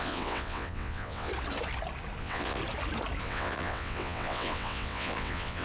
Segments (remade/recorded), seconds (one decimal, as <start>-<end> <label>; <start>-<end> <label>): 0.0-1.3 remade; 1.3-2.2 recorded; 2.2-2.6 remade; 2.6-3.2 recorded; 3.2-5.6 remade